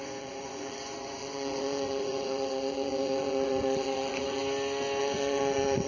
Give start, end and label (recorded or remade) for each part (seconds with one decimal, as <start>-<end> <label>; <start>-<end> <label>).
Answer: 0.0-4.4 remade; 4.4-5.0 recorded; 5.0-5.9 remade